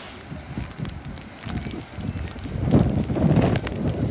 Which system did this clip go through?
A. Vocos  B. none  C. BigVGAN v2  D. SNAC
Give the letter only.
B